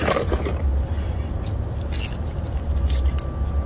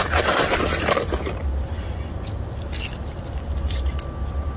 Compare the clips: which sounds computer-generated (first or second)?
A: second